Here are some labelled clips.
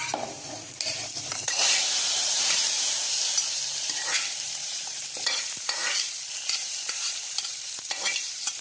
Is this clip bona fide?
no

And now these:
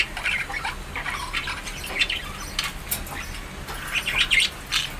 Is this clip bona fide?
yes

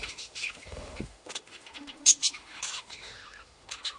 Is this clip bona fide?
no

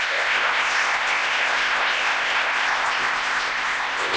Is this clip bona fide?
no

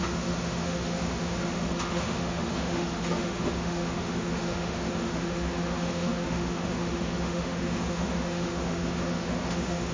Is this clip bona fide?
no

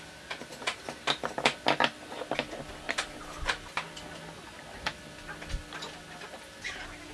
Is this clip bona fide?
yes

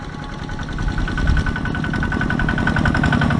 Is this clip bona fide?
yes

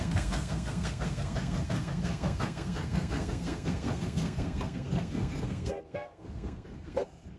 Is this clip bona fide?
no